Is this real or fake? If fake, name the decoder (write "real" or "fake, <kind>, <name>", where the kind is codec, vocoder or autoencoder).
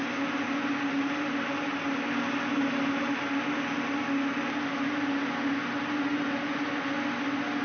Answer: real